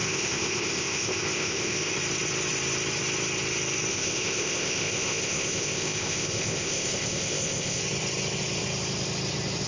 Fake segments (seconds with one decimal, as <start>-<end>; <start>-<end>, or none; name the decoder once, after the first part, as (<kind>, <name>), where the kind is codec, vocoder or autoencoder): 0.0-1.9 (codec, ZipCodec); 3.9-7.8